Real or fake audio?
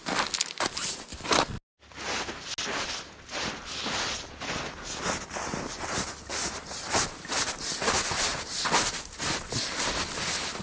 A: real